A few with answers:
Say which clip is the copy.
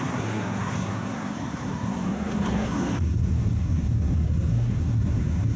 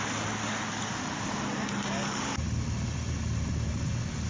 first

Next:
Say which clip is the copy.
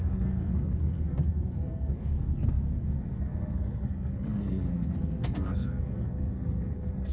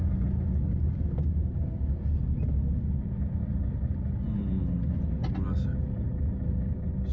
first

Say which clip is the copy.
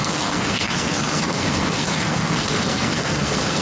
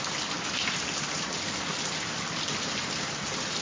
first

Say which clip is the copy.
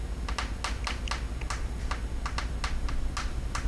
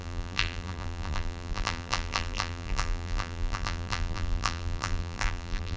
second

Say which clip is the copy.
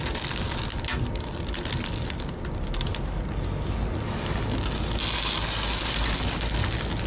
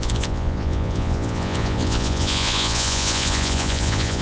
second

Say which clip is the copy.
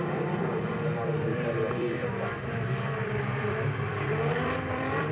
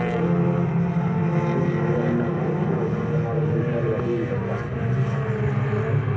first